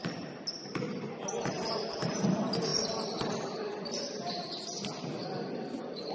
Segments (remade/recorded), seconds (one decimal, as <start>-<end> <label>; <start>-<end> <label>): 0.0-6.1 recorded